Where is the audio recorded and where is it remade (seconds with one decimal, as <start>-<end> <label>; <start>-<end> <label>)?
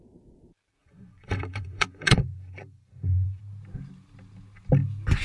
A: 0.0-0.8 recorded; 0.8-3.4 remade; 3.4-5.2 recorded